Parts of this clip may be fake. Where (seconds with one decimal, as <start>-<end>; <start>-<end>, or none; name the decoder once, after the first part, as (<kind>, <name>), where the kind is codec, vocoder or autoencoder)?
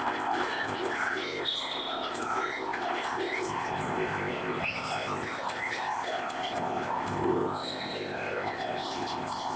0.0-9.6 (codec, ZipCodec)